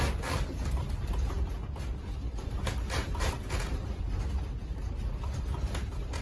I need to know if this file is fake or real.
real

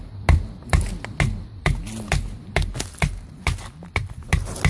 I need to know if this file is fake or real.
real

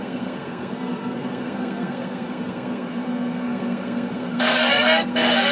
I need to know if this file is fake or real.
fake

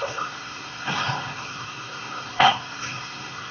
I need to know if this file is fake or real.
fake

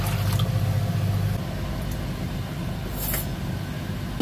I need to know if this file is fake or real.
real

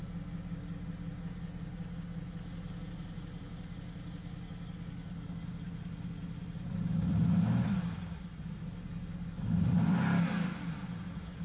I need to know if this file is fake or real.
real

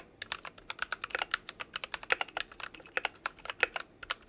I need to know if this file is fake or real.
real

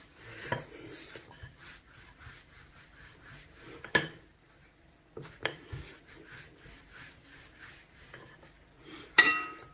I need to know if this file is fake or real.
real